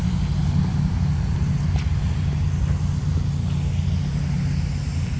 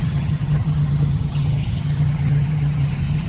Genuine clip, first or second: first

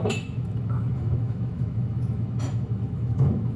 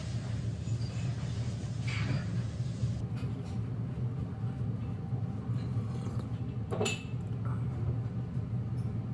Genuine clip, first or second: second